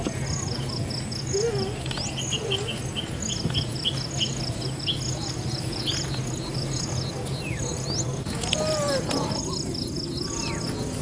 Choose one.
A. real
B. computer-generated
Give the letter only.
A